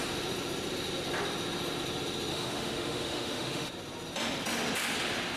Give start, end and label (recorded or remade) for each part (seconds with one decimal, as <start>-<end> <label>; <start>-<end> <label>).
0.0-2.3 recorded; 2.3-3.7 remade; 3.7-5.4 recorded